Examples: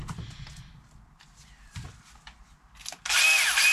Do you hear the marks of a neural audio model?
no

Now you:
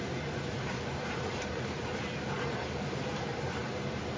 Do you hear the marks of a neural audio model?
yes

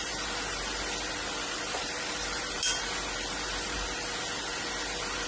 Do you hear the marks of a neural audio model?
yes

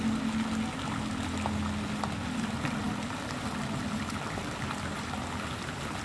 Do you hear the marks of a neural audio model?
no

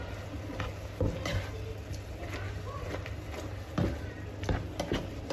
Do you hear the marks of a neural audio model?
no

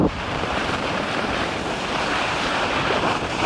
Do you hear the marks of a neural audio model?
yes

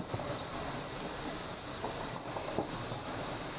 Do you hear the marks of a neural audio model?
no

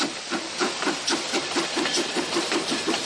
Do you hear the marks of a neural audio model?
yes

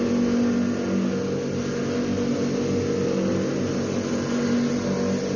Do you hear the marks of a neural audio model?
no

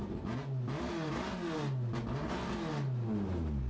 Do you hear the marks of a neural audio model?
no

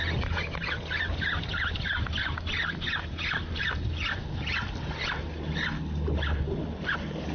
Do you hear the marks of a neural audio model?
no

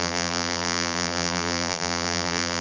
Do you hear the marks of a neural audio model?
yes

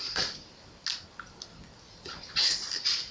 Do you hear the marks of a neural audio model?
no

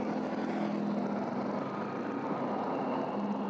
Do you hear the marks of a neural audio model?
no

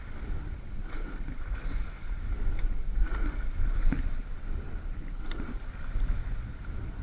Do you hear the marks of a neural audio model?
no